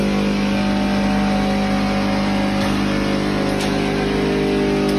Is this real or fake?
real